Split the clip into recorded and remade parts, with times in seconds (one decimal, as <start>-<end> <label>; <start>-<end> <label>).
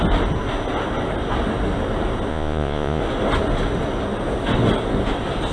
0.0-2.3 recorded; 2.3-3.0 remade; 3.0-5.5 recorded